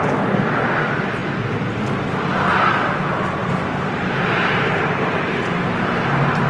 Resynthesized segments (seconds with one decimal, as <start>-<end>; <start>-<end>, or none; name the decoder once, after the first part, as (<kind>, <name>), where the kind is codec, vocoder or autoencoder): 3.4-6.5 (vocoder, BigVGAN v2)